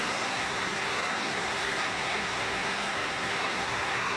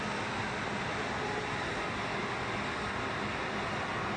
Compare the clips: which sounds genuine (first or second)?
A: second